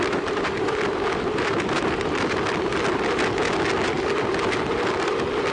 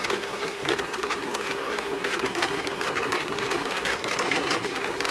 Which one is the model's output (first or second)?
second